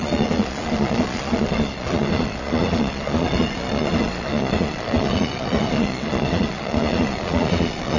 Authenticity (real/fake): fake